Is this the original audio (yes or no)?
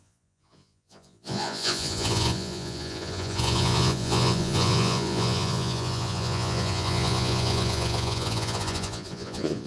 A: no